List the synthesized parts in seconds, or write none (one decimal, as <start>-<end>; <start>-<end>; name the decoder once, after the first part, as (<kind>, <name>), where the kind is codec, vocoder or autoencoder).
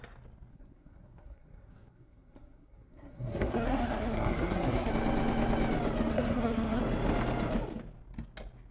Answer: 0.5-4.9 (codec, SNAC); 6.1-6.8